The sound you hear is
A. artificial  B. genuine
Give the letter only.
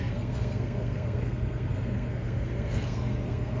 A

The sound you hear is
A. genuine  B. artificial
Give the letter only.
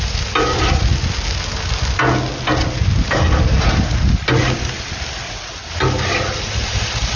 A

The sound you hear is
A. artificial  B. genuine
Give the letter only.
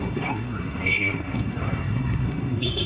A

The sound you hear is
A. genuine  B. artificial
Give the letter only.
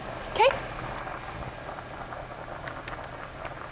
A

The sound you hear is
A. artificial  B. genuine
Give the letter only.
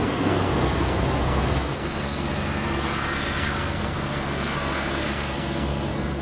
A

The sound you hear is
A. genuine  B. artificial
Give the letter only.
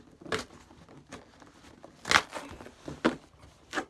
A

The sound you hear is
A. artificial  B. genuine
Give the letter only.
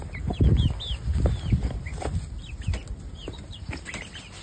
B